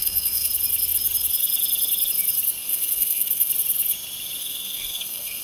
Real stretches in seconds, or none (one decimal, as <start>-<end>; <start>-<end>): 0.5-2.6; 3.5-4.4